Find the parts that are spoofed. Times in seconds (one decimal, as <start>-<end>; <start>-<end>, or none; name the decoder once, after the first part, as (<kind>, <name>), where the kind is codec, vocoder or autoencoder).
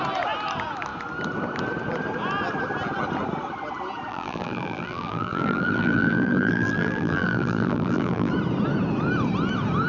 4.1-8.3 (vocoder, BigVGAN v2)